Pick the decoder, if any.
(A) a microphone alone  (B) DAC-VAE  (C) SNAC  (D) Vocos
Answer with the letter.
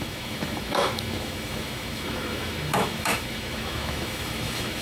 B